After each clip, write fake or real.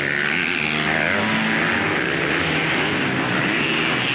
real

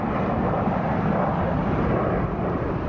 real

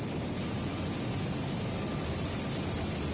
real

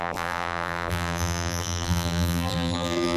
fake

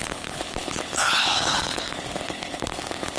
fake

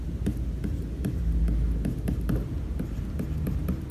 real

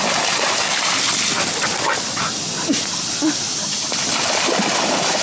real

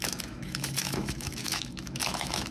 fake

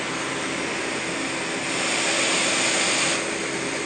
real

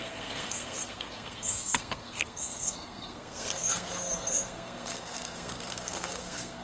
fake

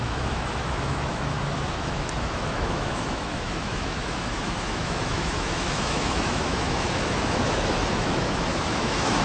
fake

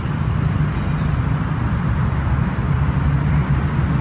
real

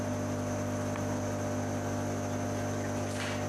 real